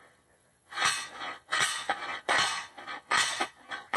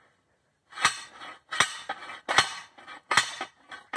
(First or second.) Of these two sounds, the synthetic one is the first